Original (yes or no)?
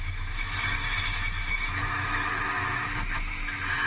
no